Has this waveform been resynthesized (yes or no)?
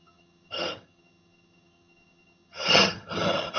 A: yes